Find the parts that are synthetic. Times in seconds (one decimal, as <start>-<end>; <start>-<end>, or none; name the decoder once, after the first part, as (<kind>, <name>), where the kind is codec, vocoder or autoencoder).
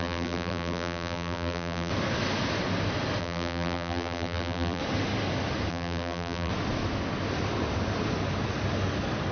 0.0-1.9 (vocoder, BigVGAN v2); 3.2-4.8; 5.7-6.5